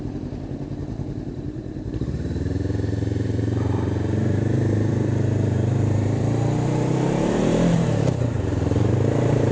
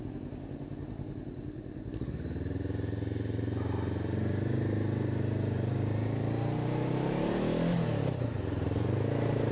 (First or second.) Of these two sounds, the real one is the second